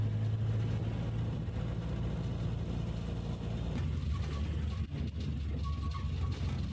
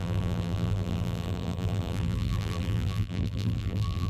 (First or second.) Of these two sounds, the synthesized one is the second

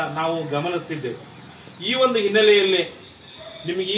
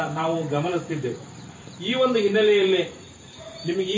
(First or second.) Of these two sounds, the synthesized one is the second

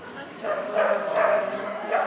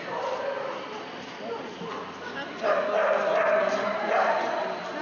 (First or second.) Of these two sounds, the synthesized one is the first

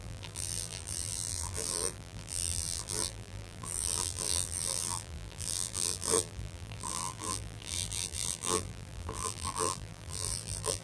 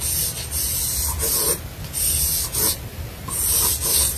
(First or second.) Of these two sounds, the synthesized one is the first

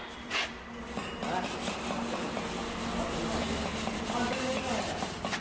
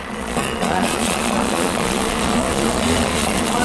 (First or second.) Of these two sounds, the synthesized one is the second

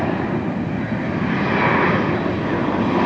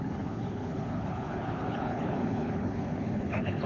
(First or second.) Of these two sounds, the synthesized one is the second